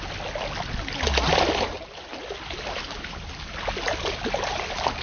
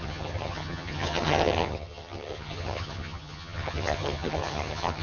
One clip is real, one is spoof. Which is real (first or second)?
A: first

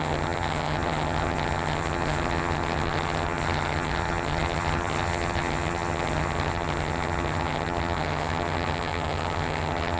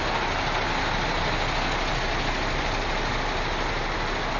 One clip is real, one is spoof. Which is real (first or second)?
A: second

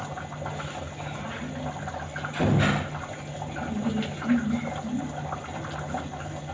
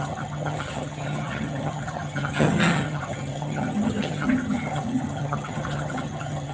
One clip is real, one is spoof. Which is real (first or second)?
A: first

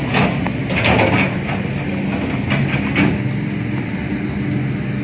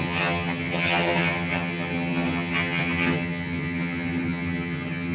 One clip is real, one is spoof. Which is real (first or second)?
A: first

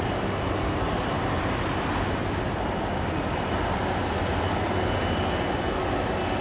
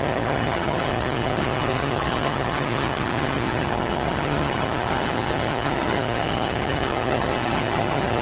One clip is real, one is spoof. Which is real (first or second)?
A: first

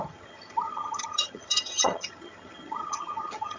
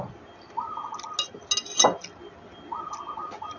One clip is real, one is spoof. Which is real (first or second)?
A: second